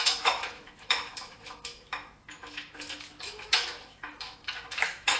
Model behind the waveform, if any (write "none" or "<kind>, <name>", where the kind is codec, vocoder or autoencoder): autoencoder, DAC-VAE